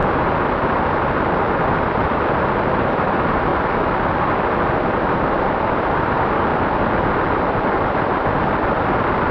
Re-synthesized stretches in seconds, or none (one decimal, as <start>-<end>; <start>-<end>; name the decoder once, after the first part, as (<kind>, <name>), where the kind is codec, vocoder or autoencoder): 2.7-3.5 (vocoder, BigVGAN v2); 5.0-6.5